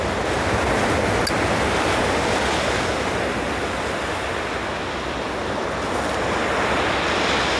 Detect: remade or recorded recorded